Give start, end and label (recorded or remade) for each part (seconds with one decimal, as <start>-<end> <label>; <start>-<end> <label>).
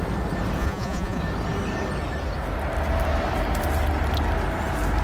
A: 0.0-0.6 recorded; 0.6-1.2 remade; 1.2-5.0 recorded